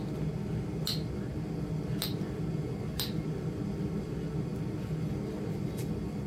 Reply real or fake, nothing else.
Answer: real